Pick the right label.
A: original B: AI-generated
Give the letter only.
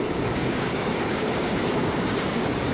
B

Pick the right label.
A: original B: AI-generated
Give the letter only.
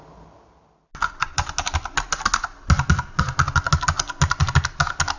A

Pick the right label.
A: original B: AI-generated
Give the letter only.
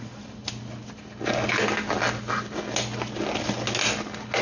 A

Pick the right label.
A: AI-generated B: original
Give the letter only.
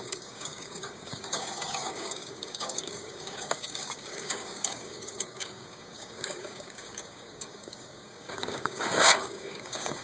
A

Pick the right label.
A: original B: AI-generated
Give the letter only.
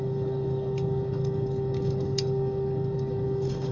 B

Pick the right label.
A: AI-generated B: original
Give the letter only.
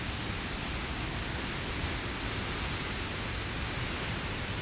B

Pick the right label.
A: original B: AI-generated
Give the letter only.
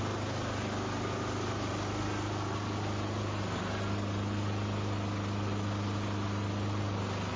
A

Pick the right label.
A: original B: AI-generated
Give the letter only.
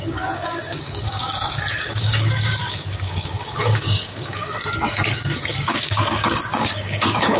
B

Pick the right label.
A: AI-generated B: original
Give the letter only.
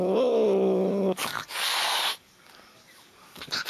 A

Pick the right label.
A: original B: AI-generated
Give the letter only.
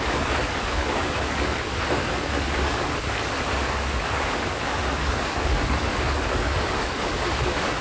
B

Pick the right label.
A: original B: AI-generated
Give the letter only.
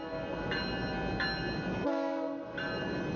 A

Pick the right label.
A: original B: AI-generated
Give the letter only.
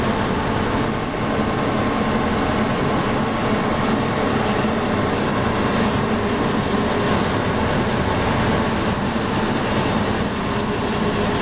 A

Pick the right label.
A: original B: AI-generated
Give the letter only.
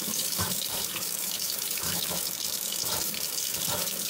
B